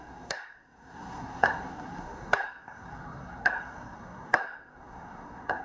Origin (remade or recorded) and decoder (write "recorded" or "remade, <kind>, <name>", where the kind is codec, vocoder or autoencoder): remade, codec, SNAC